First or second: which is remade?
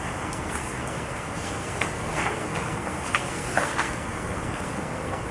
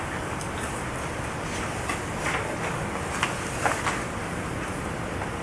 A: first